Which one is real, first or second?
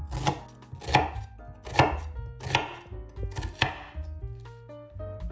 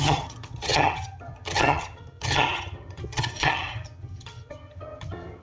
first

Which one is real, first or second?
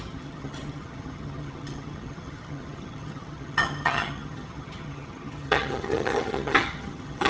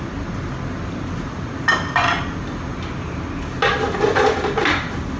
second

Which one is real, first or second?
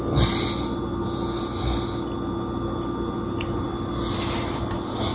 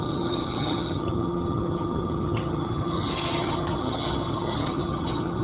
first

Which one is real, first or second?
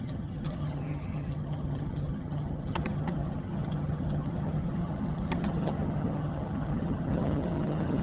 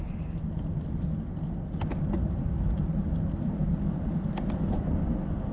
second